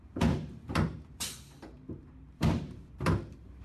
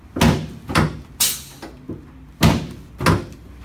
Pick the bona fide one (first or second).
second